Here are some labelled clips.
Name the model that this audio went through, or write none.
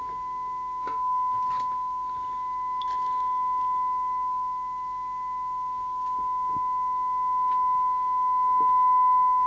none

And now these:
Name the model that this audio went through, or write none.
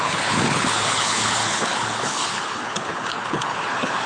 codec, HILCodec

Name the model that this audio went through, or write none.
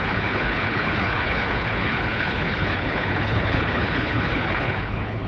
codec, HILCodec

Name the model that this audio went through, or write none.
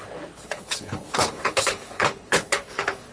codec, HILCodec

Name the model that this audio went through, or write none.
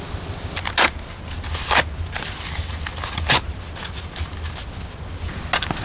none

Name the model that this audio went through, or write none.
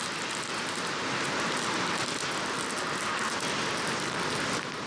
none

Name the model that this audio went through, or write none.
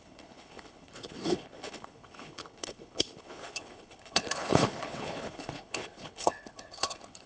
codec, HILCodec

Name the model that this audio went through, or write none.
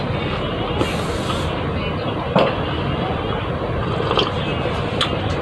none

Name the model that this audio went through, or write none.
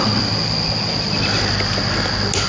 none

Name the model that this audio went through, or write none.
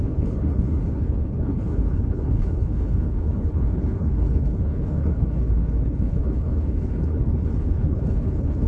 codec, HILCodec